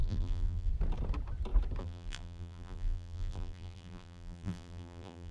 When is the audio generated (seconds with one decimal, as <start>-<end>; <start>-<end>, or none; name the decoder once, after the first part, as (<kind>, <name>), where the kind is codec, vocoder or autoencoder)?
0.0-0.7 (vocoder, BigVGAN v2); 1.8-5.3